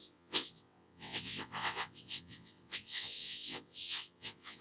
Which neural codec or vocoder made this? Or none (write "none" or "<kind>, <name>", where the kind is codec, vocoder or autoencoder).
vocoder, WaveNeXt